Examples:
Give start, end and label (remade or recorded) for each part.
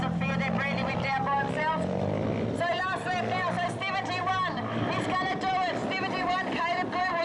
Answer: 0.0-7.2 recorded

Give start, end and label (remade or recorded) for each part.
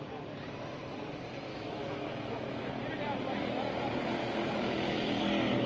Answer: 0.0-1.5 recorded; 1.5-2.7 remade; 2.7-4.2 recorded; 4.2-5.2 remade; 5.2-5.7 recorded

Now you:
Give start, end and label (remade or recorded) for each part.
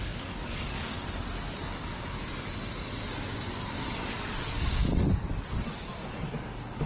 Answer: 0.0-0.9 remade; 0.9-4.5 recorded; 4.5-4.9 remade; 4.9-6.2 recorded; 6.2-6.9 remade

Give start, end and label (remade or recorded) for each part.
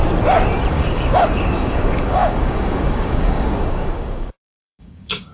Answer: 0.0-0.7 recorded; 0.7-5.3 remade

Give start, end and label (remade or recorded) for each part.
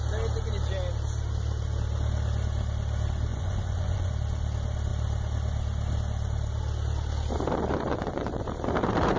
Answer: 0.0-3.3 recorded; 3.3-4.1 remade; 4.1-7.9 recorded; 7.9-8.5 remade; 8.5-9.2 recorded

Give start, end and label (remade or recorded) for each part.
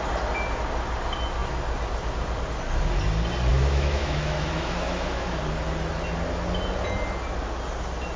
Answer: 0.0-3.5 recorded; 3.5-5.4 remade; 5.4-8.2 recorded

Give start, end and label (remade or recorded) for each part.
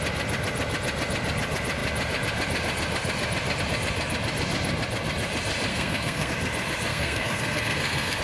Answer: 0.0-5.7 recorded; 5.7-6.3 remade; 6.3-6.9 recorded; 6.9-8.2 remade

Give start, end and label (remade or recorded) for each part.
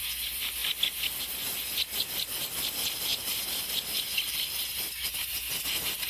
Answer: 0.0-6.1 recorded